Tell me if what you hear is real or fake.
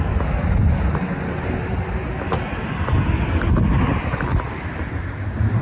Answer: real